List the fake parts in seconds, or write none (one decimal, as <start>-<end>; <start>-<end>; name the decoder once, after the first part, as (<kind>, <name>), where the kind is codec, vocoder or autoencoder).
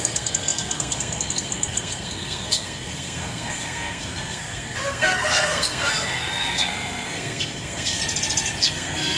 0.0-8.0 (codec, SNAC); 8.6-9.2